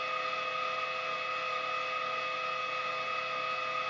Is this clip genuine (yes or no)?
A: yes